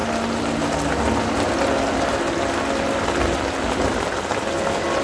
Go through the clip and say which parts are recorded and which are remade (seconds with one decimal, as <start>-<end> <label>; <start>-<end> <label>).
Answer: 0.0-5.0 recorded